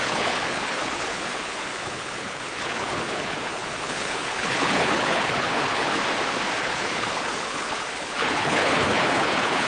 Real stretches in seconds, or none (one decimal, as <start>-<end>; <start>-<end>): 6.0-6.6